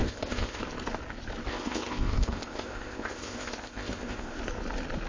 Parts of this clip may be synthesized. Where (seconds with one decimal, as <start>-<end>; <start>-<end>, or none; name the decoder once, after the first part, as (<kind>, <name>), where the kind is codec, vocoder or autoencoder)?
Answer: 0.0-0.6 (codec, ZipCodec); 1.5-4.4